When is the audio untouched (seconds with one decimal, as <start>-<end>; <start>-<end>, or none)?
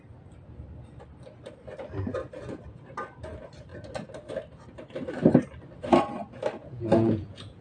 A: 0.0-6.6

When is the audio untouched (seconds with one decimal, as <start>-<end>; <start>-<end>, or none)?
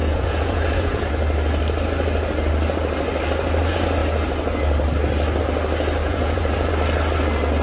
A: 1.1-6.0; 6.7-7.6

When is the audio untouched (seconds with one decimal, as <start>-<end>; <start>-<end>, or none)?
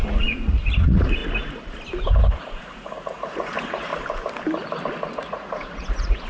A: 1.2-2.4; 3.9-5.1